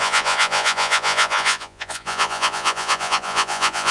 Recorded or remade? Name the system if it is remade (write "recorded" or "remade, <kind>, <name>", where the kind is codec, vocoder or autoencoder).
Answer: remade, vocoder, Vocos